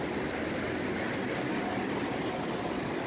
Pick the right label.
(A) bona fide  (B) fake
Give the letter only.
A